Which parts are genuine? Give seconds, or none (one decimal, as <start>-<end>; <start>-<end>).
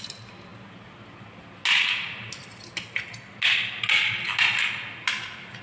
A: 0.0-5.6